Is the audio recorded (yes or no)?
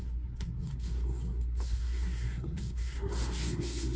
no